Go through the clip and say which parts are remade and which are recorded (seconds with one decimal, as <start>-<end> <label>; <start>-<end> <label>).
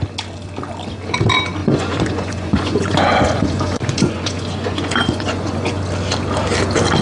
0.0-1.6 recorded; 1.6-5.8 remade; 5.8-7.0 recorded